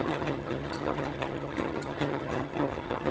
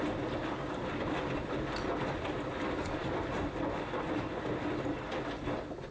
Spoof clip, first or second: first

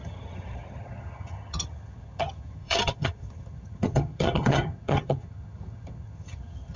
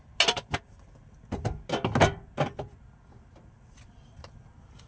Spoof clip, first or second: first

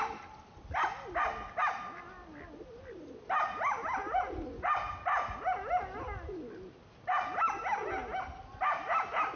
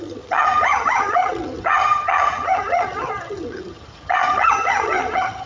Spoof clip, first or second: second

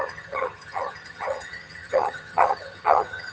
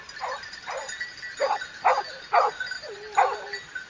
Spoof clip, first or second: first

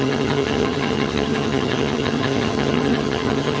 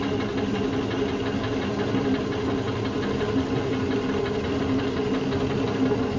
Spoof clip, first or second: first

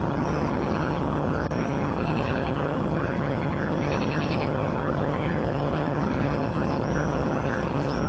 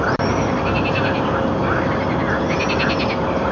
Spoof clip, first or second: first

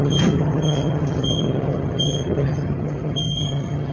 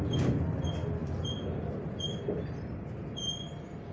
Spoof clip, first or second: first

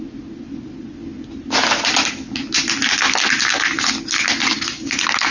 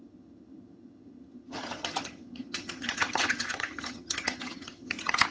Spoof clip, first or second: second